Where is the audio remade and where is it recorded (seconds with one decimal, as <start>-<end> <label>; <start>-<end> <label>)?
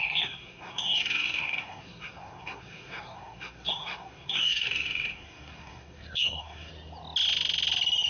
0.0-6.7 remade; 6.7-8.1 recorded